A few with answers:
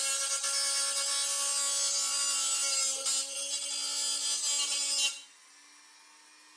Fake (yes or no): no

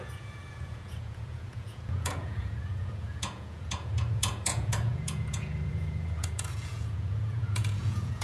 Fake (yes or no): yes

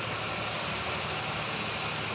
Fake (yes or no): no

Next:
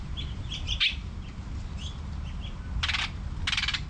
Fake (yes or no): no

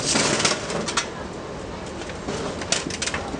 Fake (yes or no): no